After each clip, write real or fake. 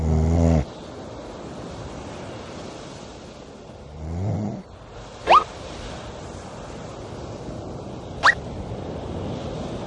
fake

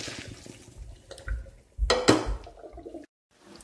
real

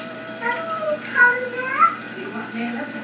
fake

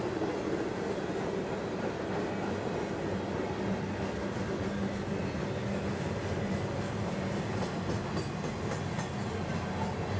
real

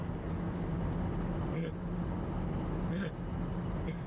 real